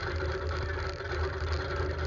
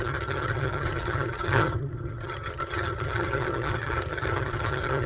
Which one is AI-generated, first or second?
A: second